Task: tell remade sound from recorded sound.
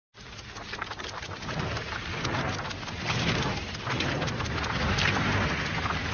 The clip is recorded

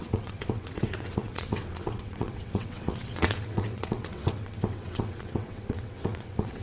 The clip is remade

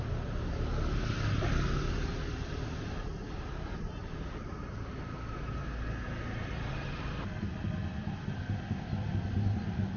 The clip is recorded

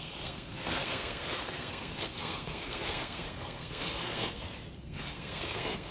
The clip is remade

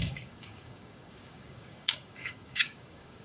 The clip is remade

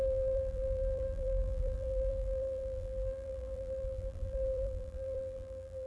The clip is remade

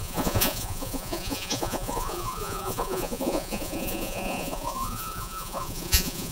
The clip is remade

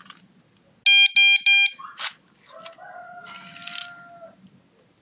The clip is recorded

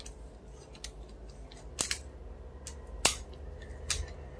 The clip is recorded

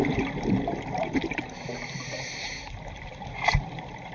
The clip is recorded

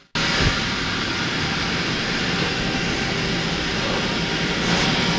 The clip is recorded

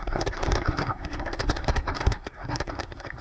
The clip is remade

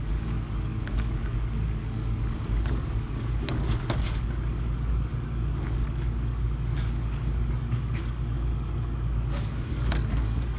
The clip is remade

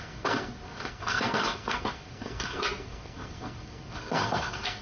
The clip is remade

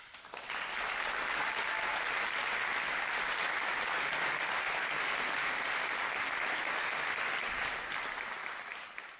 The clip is recorded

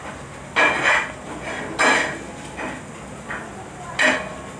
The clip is recorded